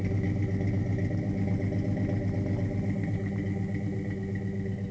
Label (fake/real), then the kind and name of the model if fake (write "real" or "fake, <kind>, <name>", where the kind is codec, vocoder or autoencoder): real